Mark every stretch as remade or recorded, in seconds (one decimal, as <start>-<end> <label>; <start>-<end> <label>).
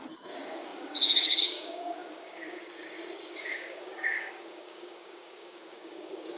0.0-6.4 remade